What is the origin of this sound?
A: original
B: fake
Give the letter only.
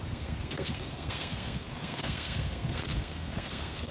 B